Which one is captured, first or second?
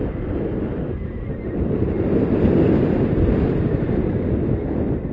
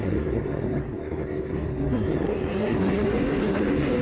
first